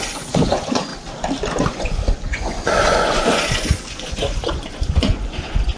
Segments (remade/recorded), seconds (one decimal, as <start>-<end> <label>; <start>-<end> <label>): 0.0-0.9 remade; 0.9-1.6 recorded; 1.6-5.8 remade